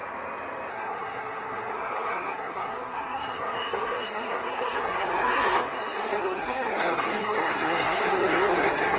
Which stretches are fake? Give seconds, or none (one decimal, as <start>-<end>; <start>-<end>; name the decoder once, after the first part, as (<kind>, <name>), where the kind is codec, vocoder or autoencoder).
0.7-9.0 (codec, SNAC)